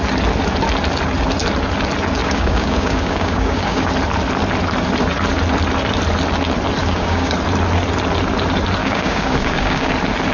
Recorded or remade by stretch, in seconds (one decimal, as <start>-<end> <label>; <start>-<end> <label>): 0.0-2.2 recorded; 2.2-3.9 remade; 3.9-6.8 recorded; 6.8-7.3 remade; 7.3-8.8 recorded; 8.8-9.9 remade; 9.9-10.3 recorded